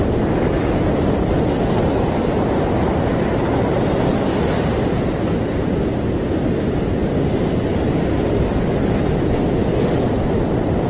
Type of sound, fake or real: real